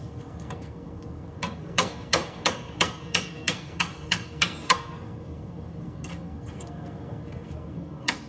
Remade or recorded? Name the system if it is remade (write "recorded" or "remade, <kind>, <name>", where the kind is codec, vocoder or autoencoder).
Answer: remade, codec, SNAC